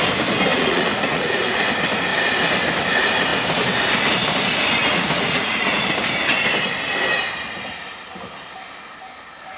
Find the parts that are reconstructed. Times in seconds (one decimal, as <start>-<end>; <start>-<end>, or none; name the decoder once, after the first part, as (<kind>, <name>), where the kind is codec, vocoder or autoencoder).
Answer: 0.5-1.7 (vocoder, Vocos); 4.8-5.8

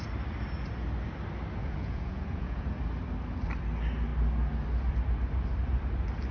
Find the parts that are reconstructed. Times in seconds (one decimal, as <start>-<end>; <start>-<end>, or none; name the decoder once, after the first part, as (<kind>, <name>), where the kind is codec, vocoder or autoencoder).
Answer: 1.6-2.8 (vocoder, Vocos)

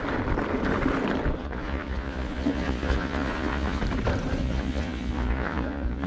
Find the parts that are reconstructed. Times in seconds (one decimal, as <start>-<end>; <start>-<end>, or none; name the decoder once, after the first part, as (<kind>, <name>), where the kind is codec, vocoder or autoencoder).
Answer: 1.4-3.8 (vocoder, Vocos); 4.4-6.1

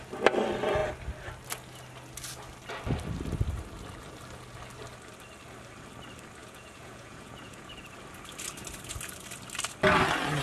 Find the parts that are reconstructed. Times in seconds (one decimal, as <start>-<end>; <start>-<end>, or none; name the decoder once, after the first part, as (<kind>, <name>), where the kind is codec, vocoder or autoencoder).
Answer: 6.4-7.8 (vocoder, Vocos)

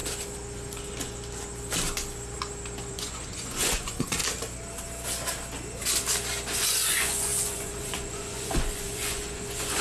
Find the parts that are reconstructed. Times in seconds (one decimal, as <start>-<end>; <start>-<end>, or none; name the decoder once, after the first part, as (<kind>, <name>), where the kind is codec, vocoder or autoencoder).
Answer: 2.9-4.2 (vocoder, Vocos); 6.6-9.8

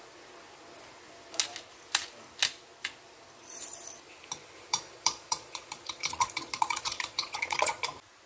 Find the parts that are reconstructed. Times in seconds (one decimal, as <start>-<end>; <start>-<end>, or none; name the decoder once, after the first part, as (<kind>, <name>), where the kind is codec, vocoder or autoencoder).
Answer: 4.7-7.8 (vocoder, Vocos)

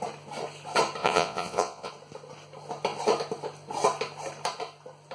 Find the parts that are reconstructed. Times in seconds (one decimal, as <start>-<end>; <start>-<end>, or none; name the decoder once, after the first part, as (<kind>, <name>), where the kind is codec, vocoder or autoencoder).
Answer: 1.0-1.9 (vocoder, Vocos)